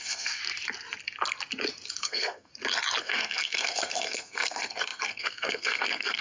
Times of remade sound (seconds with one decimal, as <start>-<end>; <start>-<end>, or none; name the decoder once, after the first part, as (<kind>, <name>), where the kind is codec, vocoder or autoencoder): 0.0-0.4 (codec, SNAC); 2.0-2.5; 3.0-6.2